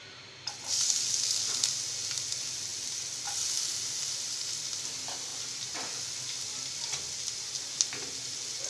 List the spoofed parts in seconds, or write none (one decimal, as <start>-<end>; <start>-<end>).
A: none